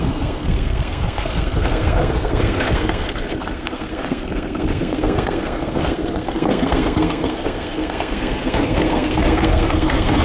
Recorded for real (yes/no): no